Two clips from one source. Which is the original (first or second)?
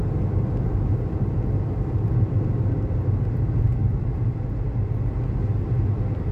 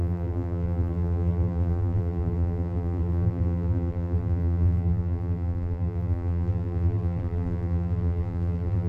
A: first